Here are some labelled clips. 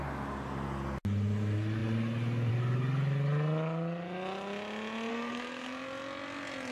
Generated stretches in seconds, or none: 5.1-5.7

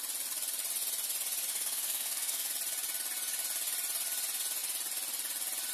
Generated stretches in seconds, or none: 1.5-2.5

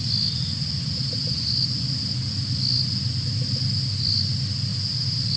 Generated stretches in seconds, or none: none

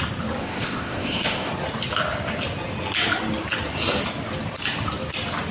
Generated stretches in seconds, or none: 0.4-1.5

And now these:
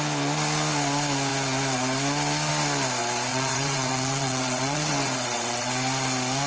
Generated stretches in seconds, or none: 3.3-5.7

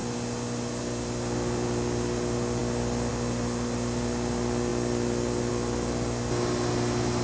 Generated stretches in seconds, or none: none